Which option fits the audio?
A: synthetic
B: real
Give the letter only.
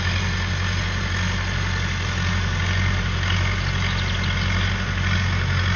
B